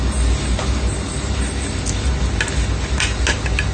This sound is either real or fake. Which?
real